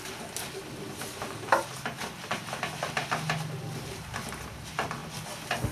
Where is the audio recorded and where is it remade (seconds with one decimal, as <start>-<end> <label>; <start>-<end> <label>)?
0.0-5.7 recorded